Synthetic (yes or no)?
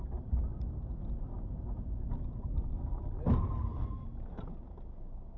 no